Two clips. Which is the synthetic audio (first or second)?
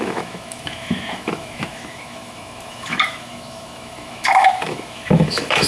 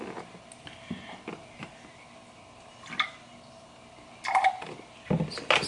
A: first